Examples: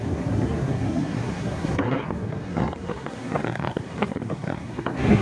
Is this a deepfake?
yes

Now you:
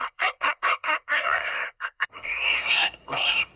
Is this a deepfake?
yes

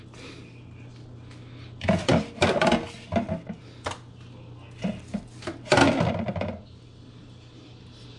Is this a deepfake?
no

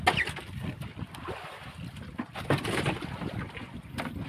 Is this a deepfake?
no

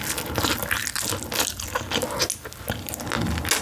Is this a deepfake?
no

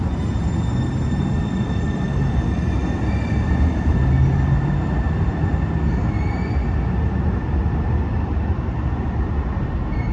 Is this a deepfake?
no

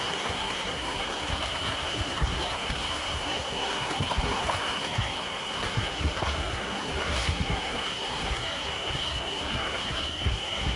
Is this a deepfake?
yes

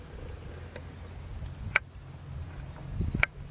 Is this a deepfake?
no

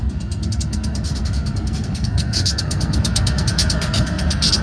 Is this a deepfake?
yes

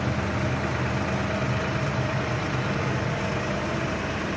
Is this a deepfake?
no